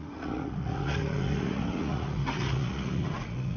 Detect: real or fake fake